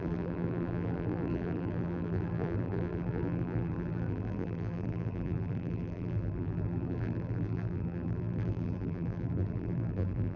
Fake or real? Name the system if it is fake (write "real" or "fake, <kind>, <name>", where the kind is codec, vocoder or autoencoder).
fake, vocoder, BigVGAN v2